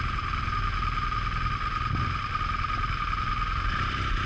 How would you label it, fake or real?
real